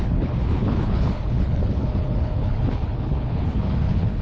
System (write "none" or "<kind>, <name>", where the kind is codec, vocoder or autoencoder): codec, HILCodec